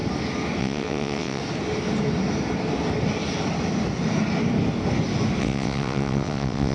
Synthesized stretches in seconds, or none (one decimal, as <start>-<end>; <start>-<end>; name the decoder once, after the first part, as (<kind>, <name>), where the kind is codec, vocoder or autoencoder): 0.6-1.4 (vocoder, WaveNeXt); 5.4-6.7